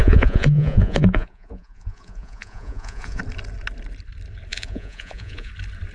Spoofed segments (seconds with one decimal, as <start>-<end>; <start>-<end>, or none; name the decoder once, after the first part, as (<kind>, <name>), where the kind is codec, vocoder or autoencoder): 0.0-3.2 (vocoder, Vocos); 4.5-5.5